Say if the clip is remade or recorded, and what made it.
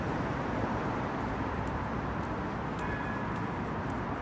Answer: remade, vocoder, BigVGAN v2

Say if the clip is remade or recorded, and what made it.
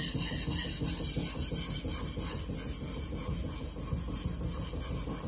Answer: recorded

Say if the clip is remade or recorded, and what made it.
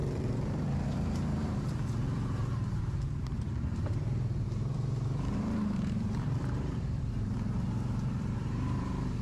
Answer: remade, vocoder, BigVGAN v2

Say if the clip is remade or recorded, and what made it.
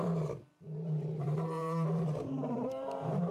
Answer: remade, vocoder, BigVGAN v2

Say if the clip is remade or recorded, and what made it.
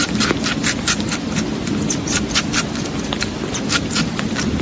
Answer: recorded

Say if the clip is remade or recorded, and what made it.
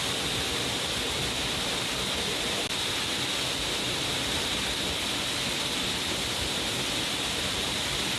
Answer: recorded